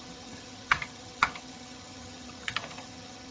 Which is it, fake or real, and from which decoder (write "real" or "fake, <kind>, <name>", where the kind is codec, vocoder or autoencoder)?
fake, vocoder, HiFi-GAN